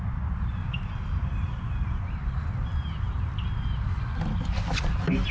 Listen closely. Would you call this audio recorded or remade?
recorded